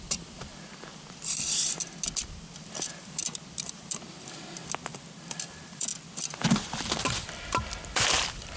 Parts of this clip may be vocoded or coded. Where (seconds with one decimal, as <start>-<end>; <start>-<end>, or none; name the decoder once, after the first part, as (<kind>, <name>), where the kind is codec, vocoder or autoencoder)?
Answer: 0.0-0.5 (vocoder, BigVGAN v2); 2.6-4.6; 5.2-5.9; 7.0-8.6

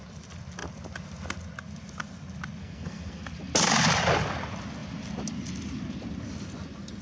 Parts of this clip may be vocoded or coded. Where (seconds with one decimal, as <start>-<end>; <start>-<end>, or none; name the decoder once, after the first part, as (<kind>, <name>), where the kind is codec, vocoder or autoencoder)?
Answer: 2.6-3.2 (codec, SNAC)